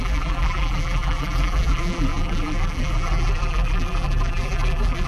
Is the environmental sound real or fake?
fake